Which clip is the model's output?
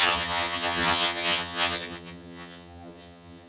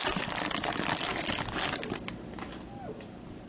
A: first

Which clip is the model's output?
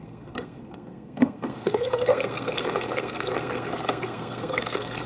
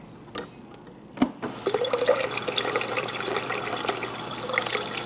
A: first